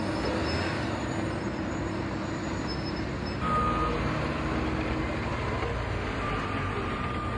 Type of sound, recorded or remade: recorded